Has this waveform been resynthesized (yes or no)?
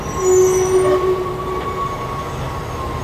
no